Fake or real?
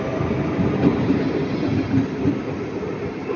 real